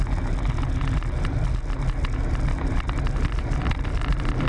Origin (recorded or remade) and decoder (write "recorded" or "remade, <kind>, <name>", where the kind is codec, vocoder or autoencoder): recorded